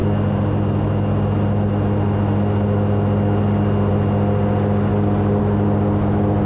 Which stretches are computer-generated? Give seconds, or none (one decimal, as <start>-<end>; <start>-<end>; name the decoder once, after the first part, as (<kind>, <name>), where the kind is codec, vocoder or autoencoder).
none